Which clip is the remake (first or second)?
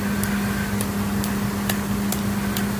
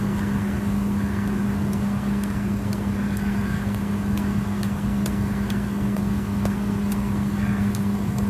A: second